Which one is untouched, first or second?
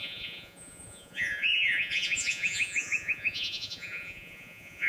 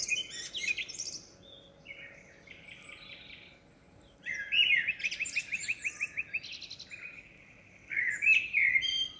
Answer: second